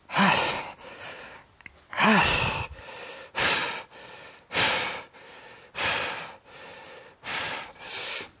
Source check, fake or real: real